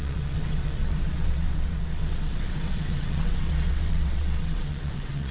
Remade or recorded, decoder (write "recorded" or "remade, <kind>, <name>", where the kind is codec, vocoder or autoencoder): remade, vocoder, WaveNeXt